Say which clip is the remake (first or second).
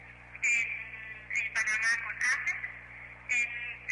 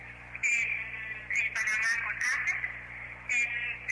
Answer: second